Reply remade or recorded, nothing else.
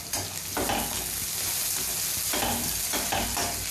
recorded